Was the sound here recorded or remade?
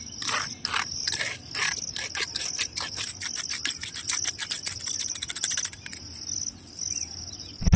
recorded